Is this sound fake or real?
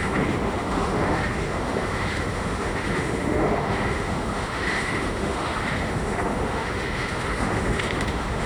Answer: fake